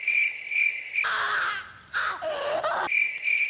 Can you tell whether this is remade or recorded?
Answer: recorded